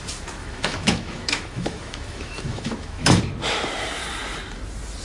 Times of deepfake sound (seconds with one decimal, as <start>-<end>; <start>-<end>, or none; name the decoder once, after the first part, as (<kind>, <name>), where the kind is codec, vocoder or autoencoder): 0.4-3.2 (autoencoder, DAC-VAE)